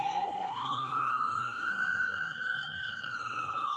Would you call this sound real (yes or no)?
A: no